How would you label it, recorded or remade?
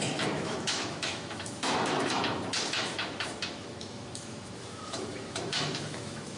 remade